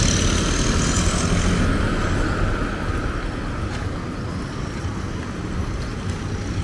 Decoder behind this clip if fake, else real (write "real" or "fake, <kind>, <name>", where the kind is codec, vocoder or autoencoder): real